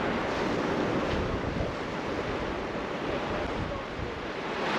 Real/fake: real